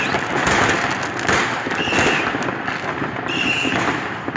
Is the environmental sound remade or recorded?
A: recorded